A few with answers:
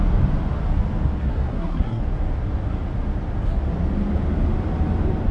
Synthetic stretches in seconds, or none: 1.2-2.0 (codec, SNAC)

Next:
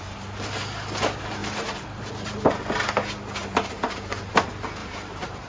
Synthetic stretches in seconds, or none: 1.4-2.1 (vocoder, BigVGAN v2); 3.4-4.3; 4.8-5.5

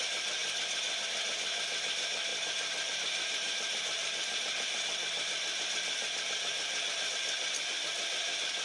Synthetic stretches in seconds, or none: 0.4-1.0 (vocoder, BigVGAN v2); 2.3-7.1

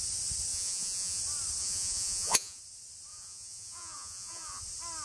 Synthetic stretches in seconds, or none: 0.5-1.2 (vocoder, Vocos); 1.6-2.6; 3.1-4.6

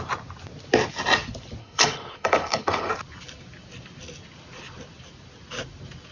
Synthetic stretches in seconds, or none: 1.6-2.9 (codec, HILCodec)